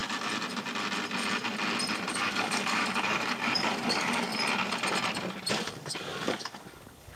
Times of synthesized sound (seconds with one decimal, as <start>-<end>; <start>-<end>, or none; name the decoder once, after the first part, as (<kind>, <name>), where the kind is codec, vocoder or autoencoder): 2.1-4.3 (codec, DAC); 5.5-7.2